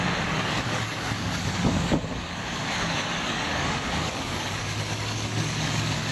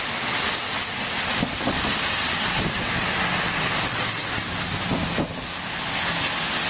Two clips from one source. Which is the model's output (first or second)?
first